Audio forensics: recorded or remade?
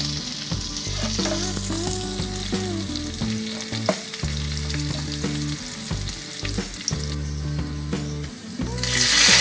recorded